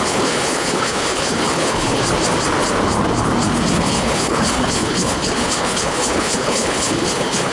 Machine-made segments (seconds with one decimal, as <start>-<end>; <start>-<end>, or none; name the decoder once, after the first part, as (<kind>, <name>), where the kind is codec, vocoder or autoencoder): 0.0-2.0 (codec, HILCodec); 3.7-7.5